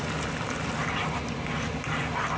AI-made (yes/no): no